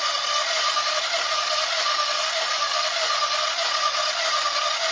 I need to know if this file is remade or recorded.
remade